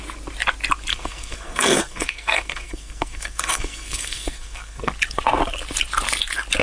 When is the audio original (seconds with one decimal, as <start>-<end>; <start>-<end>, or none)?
0.0-0.9; 4.9-6.6